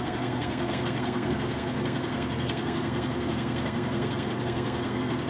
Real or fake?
fake